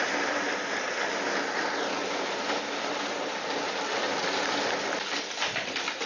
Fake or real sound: real